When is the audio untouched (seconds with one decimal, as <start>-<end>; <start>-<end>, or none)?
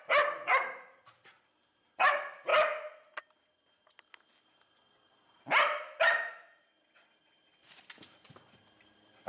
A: 0.0-9.3